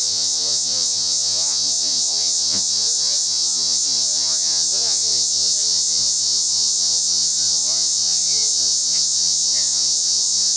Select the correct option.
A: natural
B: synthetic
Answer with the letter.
B